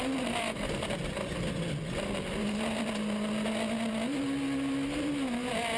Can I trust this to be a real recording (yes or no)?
yes